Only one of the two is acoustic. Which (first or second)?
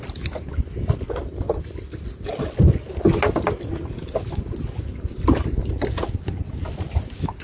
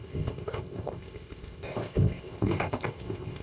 first